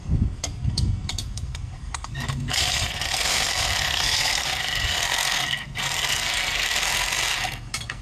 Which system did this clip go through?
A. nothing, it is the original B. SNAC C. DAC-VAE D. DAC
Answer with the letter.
B